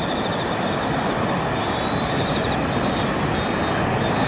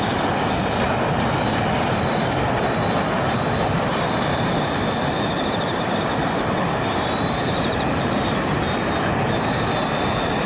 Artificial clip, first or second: second